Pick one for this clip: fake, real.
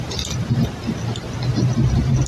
real